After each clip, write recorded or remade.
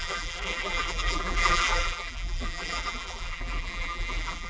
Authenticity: remade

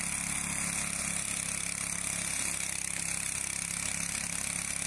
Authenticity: recorded